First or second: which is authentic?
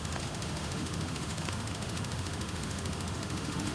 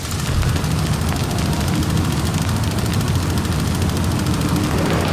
second